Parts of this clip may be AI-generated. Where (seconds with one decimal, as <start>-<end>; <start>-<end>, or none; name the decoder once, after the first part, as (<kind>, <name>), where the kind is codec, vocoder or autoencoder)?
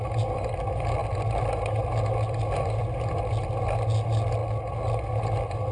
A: none